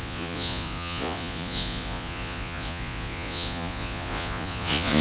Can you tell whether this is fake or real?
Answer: fake